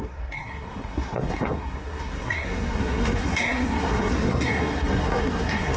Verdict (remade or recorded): remade